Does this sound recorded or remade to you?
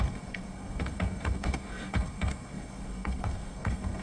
remade